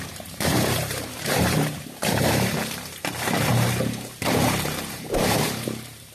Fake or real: fake